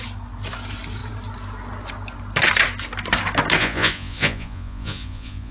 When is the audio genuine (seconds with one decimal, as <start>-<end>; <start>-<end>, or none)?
0.0-3.6